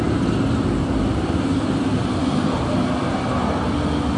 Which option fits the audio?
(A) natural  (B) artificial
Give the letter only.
A